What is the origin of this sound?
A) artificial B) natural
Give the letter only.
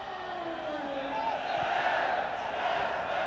B